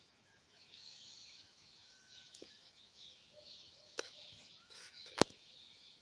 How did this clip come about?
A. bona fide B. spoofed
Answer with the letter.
B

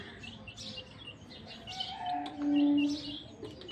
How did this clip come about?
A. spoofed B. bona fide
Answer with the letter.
B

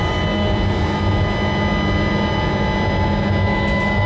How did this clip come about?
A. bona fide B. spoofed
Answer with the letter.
A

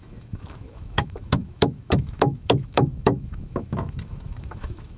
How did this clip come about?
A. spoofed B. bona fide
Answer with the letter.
A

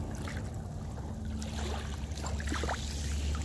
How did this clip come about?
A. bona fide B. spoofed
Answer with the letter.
A